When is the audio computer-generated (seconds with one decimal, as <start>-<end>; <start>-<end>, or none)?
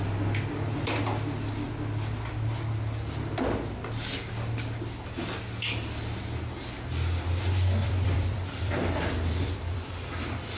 7.8-9.9